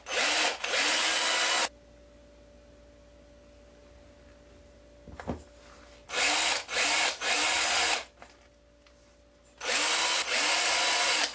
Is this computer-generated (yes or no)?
no